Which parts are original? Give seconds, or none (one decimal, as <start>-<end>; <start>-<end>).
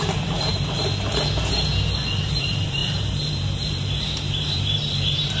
0.8-2.2